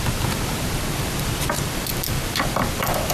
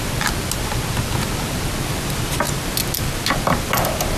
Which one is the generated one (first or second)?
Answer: first